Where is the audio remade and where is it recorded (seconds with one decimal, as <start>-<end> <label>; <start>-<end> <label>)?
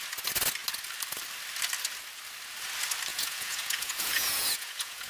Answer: 0.0-3.1 recorded; 3.1-5.1 remade